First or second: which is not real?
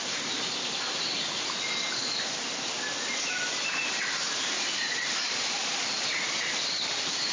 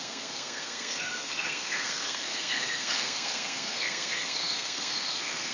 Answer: second